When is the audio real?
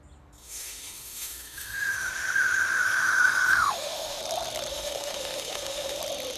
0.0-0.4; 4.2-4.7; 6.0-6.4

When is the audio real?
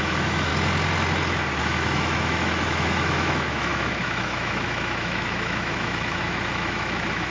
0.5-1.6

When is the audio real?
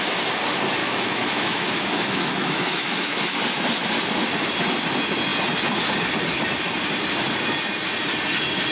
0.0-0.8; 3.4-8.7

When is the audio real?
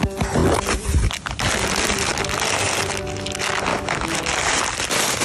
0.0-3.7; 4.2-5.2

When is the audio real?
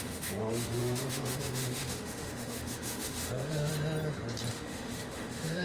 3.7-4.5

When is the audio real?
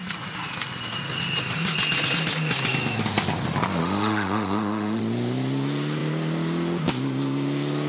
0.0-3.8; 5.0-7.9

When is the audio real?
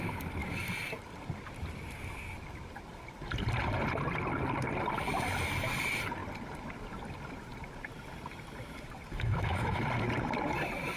0.0-9.1; 9.8-11.0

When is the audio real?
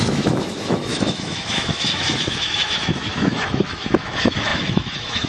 none